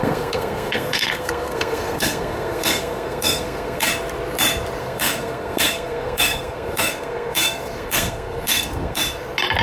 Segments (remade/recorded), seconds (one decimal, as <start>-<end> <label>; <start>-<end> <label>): 0.0-3.9 remade; 3.9-4.8 recorded; 4.8-9.0 remade; 9.0-9.6 recorded